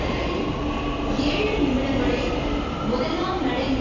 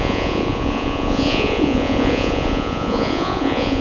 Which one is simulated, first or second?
second